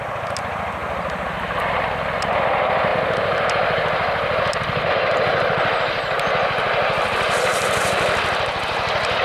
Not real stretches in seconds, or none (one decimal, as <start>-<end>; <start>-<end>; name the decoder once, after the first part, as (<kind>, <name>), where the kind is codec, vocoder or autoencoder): 0.8-1.6 (vocoder, BigVGAN v2); 7.5-8.6